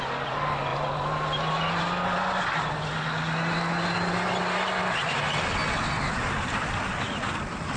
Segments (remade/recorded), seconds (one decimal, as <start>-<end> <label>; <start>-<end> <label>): 0.0-7.8 recorded